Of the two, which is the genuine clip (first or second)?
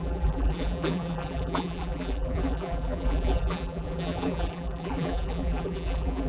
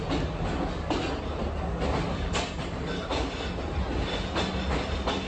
second